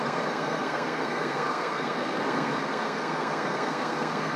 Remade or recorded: remade